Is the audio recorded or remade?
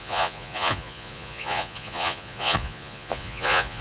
remade